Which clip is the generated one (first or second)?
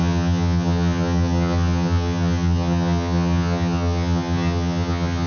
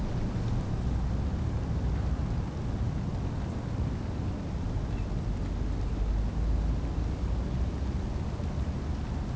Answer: first